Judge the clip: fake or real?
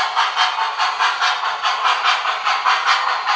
real